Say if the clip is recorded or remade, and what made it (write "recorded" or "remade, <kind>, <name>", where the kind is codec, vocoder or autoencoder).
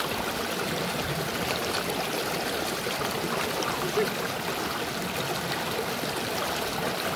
recorded